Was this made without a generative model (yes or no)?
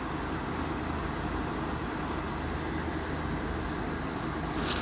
yes